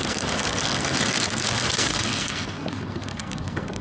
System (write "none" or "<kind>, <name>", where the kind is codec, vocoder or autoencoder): codec, SNAC